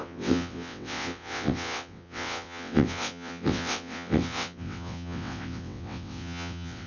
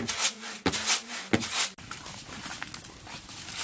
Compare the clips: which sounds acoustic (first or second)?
second